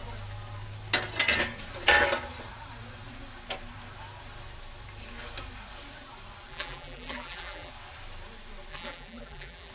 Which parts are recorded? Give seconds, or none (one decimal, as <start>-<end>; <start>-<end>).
0.0-6.5; 7.7-8.7